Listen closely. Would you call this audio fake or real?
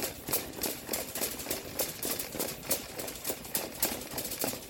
fake